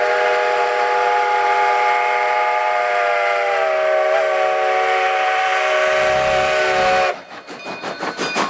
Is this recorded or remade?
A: recorded